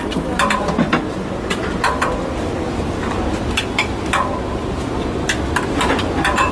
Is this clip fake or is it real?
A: real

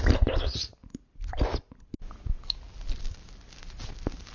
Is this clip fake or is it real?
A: real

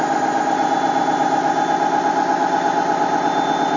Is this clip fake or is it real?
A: real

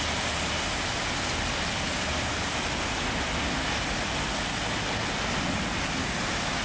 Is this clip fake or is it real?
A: real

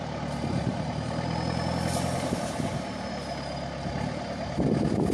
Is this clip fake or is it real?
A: real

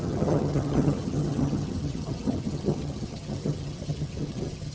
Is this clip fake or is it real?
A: fake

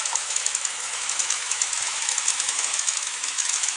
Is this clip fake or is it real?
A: fake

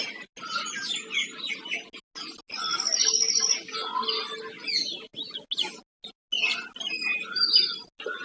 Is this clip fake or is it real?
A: real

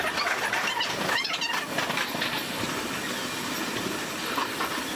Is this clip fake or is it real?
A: real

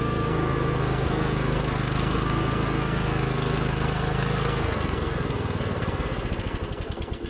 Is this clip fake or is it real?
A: fake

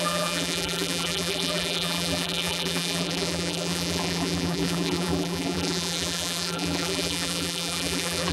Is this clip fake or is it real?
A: fake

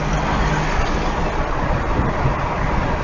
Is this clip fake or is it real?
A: real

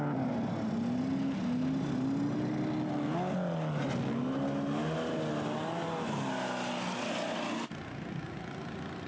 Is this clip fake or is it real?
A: real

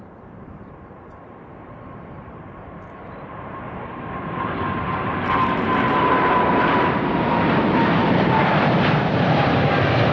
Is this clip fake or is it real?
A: fake